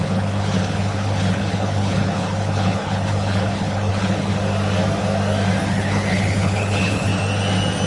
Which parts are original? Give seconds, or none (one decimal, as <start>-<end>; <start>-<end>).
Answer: 4.3-5.7; 7.1-7.9